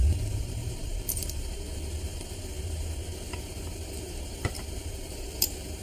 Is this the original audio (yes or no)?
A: no